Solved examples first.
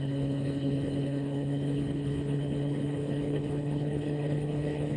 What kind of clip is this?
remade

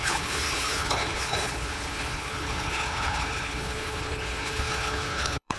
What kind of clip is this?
remade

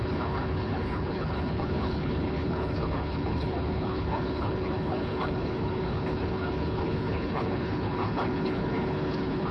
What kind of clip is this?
remade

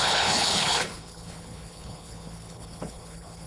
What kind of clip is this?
remade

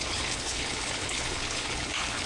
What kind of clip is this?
remade